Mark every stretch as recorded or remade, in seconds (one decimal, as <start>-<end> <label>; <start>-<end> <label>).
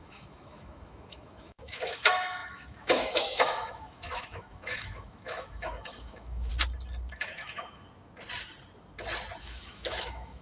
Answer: 0.0-6.5 remade; 6.5-7.1 recorded; 7.1-7.8 remade; 7.8-9.4 recorded; 9.4-10.4 remade